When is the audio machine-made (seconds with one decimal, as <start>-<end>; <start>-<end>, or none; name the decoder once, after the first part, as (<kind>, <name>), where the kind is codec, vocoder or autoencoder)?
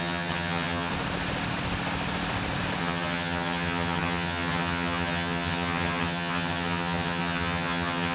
0.0-0.9 (vocoder, HiFi-GAN); 2.8-8.1